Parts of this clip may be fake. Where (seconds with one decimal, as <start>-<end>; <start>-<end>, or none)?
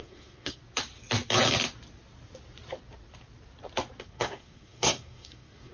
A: 0.0-0.6; 4.0-5.7